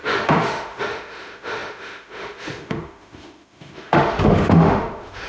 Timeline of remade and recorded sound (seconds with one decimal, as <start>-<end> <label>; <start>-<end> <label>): 0.0-5.3 remade